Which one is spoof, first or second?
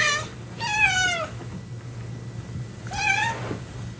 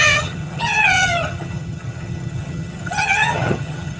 second